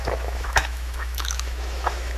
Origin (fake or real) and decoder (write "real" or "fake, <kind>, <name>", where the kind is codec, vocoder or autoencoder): fake, autoencoder, DAC-VAE